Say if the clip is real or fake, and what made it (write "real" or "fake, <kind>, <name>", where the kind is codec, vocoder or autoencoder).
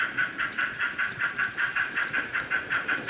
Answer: fake, vocoder, BigVGAN v2